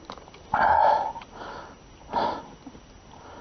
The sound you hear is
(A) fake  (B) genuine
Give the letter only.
B